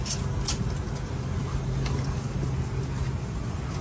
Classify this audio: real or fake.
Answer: real